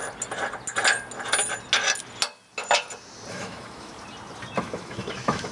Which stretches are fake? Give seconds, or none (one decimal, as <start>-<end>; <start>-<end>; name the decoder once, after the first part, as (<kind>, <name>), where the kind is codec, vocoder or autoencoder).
3.3-3.9 (autoencoder, DAC-VAE); 4.6-5.5